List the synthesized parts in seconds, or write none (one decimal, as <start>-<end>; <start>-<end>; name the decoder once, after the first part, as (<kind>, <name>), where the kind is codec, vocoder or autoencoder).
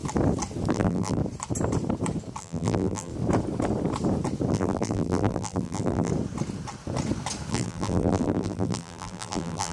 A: 0.7-1.2 (vocoder, BigVGAN v2); 2.4-3.1; 4.5-6.1; 7.5-9.7